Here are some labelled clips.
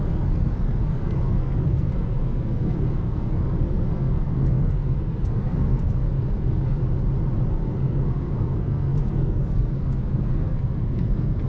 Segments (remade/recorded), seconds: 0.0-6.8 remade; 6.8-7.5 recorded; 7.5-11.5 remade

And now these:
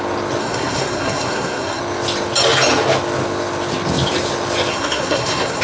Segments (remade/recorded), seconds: 0.0-0.4 recorded; 0.4-1.8 remade; 1.8-4.7 recorded; 4.7-5.6 remade